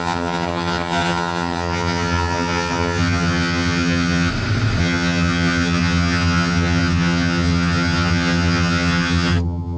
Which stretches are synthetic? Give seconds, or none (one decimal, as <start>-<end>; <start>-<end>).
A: 0.0-4.3; 4.8-9.8